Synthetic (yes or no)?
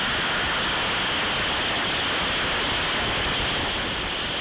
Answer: no